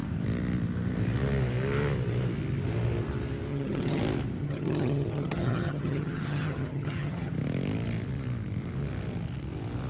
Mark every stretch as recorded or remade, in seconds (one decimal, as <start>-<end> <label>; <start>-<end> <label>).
0.0-3.5 recorded; 3.5-4.0 remade; 4.0-4.4 recorded; 4.4-7.3 remade; 7.3-9.9 recorded